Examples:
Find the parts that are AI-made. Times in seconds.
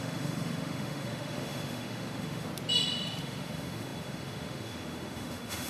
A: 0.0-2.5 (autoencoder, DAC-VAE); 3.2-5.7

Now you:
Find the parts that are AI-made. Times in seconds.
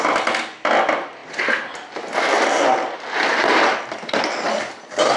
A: none